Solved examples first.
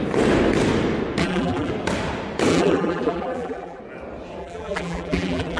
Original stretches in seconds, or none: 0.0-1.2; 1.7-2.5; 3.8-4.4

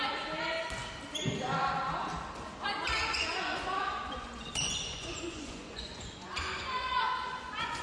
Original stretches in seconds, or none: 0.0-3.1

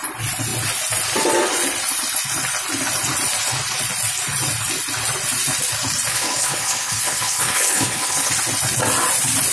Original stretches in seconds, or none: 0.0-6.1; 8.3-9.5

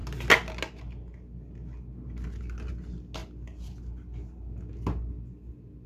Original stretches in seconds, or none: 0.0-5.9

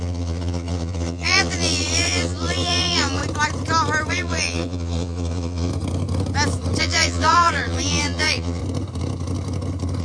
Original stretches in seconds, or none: 3.2-4.1; 5.7-6.8; 8.6-10.0

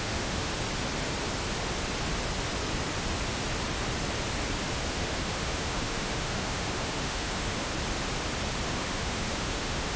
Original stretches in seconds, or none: 0.5-4.9; 7.7-8.7

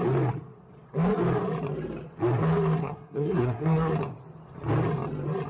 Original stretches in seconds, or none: 0.0-2.8; 3.9-5.5